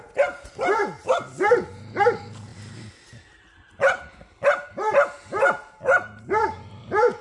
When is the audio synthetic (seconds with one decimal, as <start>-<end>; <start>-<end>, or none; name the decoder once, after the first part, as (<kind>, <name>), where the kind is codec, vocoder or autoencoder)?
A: none